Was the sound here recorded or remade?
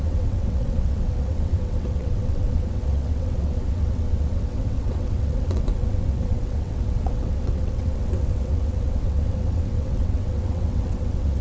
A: remade